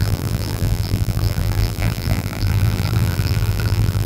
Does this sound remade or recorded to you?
remade